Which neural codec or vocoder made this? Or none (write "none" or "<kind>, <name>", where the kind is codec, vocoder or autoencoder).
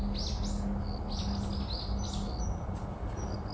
none